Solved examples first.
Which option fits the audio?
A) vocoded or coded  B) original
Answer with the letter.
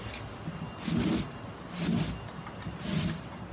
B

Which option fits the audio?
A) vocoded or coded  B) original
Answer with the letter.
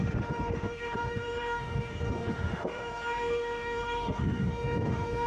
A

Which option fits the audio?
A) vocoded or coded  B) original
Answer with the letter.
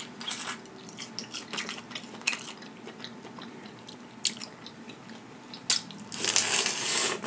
B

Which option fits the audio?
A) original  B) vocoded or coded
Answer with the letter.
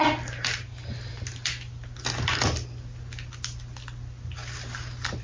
A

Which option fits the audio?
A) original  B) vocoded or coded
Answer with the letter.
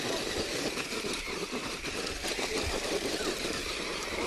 B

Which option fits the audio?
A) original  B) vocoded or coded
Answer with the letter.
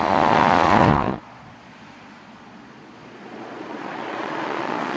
B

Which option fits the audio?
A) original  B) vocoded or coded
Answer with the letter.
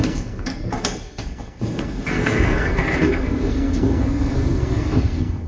B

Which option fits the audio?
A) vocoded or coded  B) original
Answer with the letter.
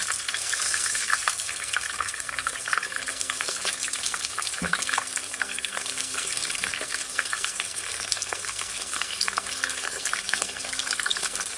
A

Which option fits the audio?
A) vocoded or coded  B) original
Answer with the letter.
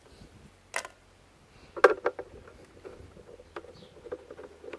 B